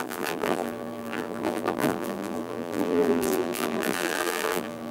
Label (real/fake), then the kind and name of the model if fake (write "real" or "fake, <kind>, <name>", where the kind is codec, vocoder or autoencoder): fake, vocoder, BigVGAN v2